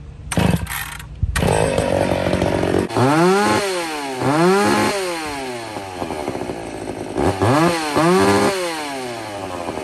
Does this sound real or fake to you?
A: real